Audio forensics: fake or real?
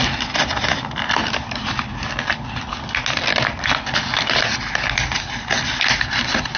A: real